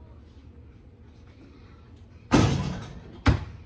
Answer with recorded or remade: recorded